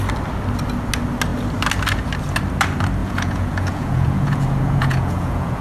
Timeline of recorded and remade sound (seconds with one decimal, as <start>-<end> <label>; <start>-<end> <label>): 0.0-3.0 recorded; 3.0-5.6 remade